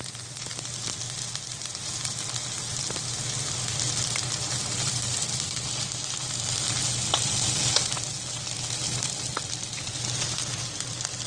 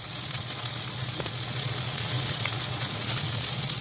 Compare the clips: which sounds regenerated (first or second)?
second